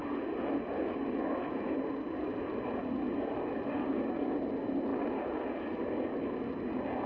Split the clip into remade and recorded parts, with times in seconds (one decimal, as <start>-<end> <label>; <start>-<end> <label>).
0.0-4.9 recorded; 4.9-6.4 remade; 6.4-7.1 recorded